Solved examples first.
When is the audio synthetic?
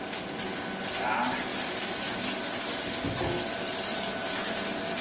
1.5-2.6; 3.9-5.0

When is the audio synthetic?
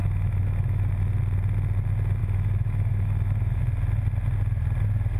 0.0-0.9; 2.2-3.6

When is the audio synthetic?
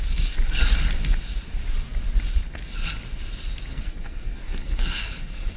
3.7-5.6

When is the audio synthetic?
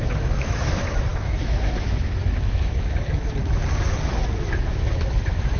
0.0-3.6; 4.4-5.6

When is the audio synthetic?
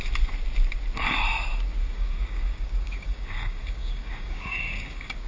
1.8-5.3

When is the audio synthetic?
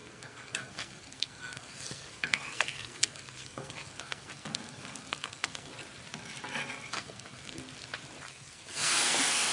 0.0-5.7; 6.9-7.6; 8.3-9.5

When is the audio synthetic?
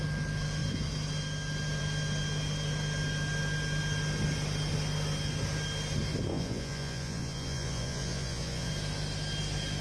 6.3-8.7